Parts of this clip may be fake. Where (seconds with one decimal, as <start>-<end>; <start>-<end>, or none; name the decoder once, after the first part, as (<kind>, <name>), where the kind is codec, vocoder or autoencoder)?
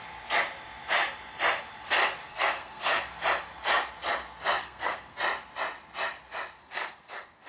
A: 2.3-3.0 (codec, SNAC); 4.6-5.2; 6.6-7.5